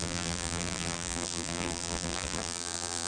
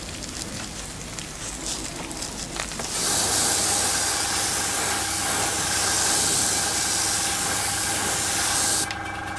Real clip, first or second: second